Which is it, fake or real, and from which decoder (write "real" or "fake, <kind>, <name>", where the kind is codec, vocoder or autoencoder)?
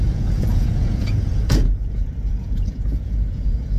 fake, vocoder, Vocos